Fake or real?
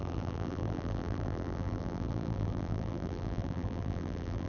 fake